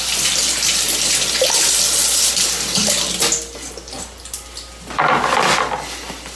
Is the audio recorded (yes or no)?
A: yes